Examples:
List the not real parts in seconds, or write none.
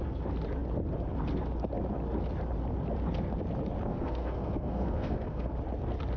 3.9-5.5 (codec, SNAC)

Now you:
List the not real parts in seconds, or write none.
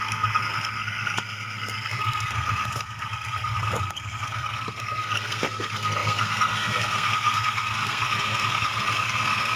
0.0-9.6 (codec, SNAC)